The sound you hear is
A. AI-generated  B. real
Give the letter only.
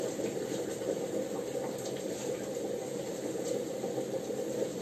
A